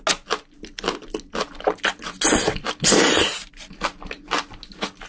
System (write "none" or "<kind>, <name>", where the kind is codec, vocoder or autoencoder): none